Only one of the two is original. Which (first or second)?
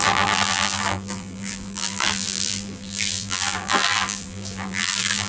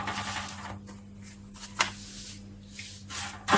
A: second